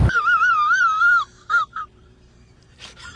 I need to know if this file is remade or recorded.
remade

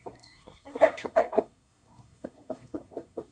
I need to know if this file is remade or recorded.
remade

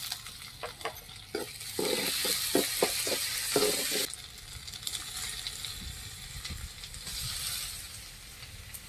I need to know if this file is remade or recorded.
recorded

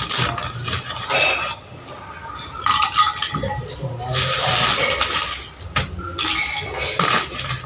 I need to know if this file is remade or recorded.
recorded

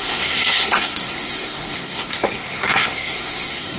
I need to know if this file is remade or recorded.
remade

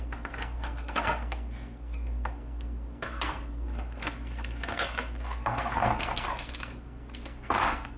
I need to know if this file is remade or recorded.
remade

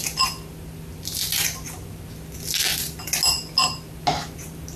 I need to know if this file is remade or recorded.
recorded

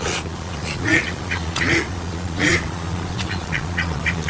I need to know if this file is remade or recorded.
remade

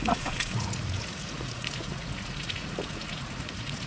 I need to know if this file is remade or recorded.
remade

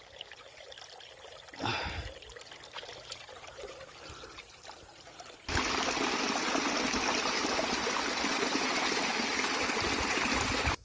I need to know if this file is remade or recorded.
recorded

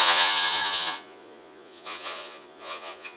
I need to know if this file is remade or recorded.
remade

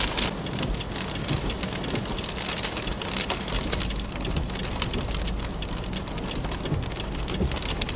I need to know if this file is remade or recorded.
recorded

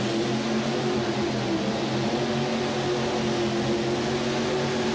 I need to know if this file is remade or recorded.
recorded